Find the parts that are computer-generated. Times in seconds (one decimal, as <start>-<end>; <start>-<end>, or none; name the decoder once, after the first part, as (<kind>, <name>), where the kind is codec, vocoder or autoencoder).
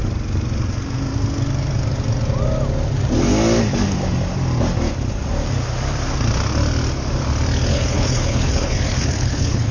7.7-9.7 (codec, HILCodec)